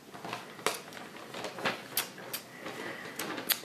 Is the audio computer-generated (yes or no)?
no